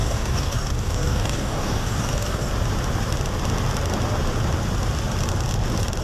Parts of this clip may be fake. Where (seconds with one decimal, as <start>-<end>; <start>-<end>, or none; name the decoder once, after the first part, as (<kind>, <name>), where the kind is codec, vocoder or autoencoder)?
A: 0.0-2.5 (codec, DAC)